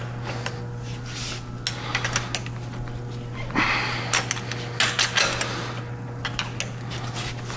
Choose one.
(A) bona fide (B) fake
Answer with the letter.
A